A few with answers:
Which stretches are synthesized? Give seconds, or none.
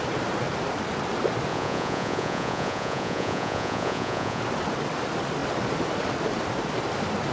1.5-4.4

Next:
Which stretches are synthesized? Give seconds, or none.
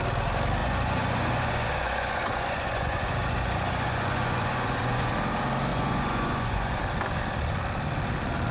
0.6-5.1; 5.7-6.8